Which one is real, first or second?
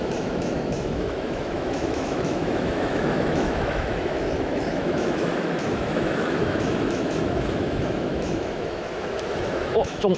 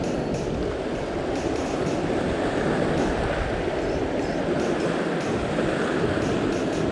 second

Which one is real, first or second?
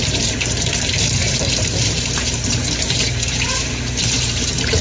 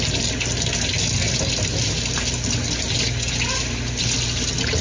second